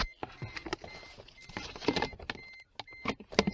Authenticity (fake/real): real